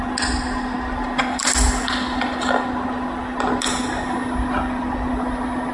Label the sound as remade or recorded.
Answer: recorded